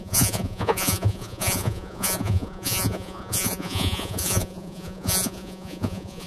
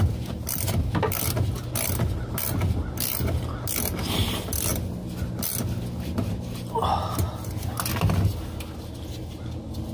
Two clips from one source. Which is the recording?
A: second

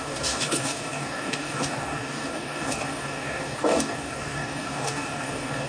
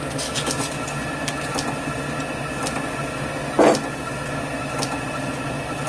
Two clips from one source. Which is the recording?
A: second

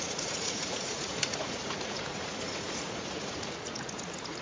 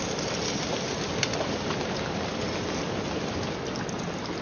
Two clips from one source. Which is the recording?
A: second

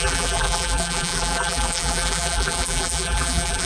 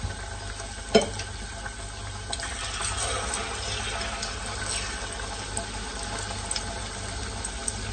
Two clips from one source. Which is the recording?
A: second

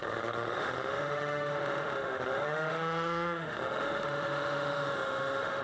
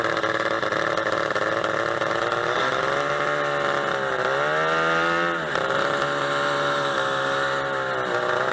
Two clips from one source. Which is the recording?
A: second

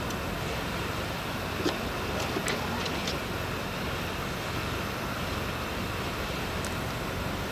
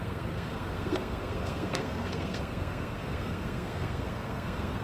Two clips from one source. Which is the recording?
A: first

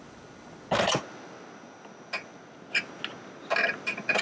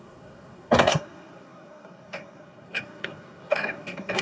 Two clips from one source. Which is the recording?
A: first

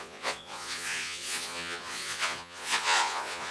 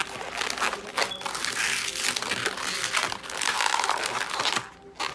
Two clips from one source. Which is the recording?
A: second